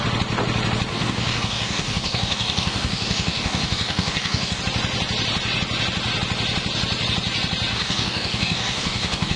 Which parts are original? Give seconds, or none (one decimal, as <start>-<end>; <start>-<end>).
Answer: 0.0-0.9; 4.6-7.7